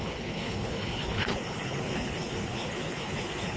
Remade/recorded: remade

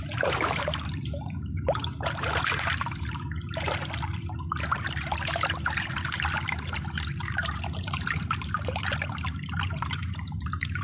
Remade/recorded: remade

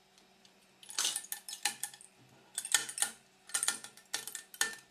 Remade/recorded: recorded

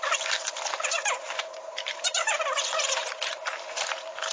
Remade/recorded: remade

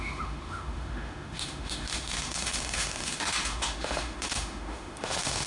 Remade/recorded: remade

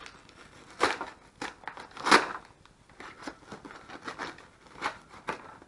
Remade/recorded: recorded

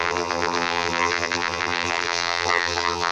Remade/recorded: remade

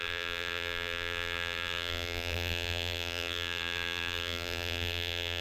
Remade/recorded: remade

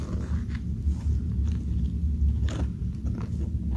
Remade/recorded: recorded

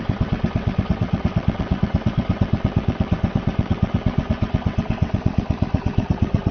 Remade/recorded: remade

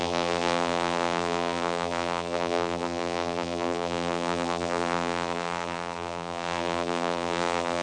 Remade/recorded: remade